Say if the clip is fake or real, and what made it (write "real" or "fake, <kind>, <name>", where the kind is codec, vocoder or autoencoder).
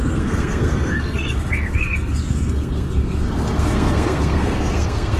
fake, codec, SNAC